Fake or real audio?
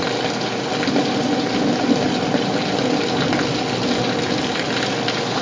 real